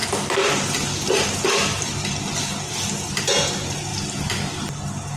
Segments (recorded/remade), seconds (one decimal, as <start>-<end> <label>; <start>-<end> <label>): 0.0-5.2 recorded